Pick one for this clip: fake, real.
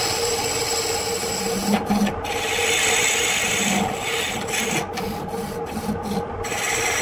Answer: real